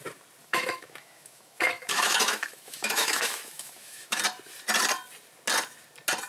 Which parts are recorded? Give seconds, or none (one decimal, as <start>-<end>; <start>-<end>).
0.0-0.4; 4.2-6.3